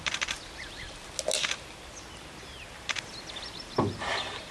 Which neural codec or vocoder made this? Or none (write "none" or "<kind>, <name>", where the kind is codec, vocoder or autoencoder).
none